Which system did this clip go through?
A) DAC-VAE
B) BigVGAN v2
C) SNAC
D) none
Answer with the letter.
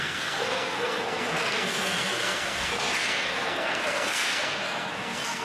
C